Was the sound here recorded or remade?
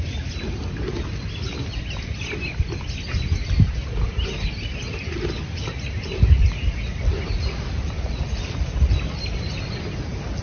recorded